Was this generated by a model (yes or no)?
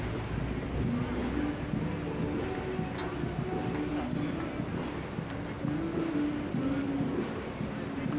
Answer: no